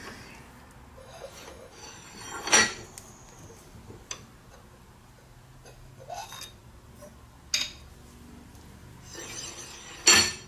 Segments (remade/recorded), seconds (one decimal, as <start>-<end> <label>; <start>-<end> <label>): 0.0-1.0 recorded; 1.0-1.8 remade; 1.8-10.5 recorded